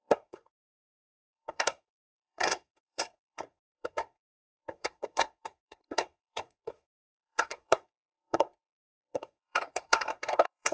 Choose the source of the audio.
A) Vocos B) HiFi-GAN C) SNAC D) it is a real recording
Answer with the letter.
C